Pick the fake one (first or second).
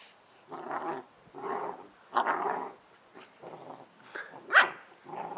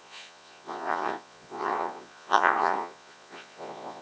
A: second